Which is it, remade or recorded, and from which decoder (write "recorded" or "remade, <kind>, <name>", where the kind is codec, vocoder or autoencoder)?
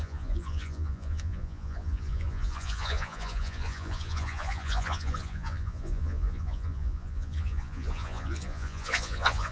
remade, vocoder, Vocos